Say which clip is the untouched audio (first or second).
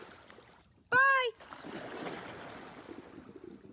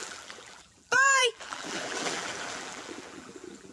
first